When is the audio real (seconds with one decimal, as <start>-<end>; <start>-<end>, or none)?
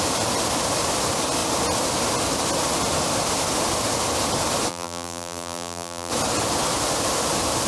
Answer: 0.0-4.7; 6.1-7.7